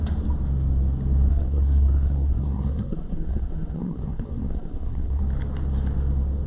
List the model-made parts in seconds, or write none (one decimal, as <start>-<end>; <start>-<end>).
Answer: 1.3-5.2